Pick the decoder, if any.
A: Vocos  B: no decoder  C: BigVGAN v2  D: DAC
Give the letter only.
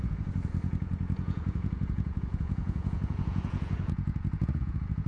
A